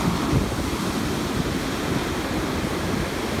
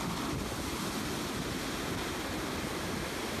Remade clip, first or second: first